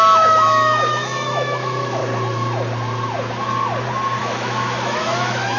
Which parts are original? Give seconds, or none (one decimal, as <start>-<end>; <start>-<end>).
2.0-4.2